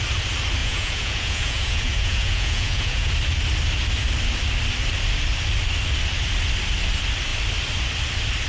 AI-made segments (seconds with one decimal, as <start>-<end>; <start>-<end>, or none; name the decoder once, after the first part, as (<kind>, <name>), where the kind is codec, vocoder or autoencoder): 0.6-3.1 (vocoder, Vocos)